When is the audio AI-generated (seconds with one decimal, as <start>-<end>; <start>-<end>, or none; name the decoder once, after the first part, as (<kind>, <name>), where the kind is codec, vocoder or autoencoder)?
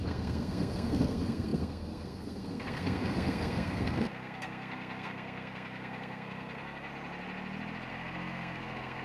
0.0-6.9 (codec, SNAC); 7.9-9.0